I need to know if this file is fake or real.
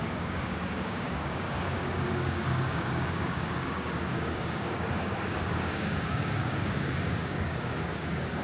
fake